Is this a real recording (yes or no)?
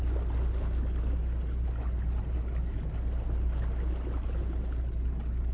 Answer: yes